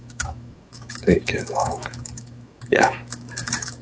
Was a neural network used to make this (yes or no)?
yes